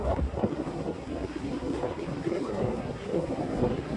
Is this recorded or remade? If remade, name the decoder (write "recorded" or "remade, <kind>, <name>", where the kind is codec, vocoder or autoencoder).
remade, codec, SNAC